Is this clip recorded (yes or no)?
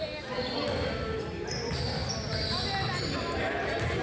yes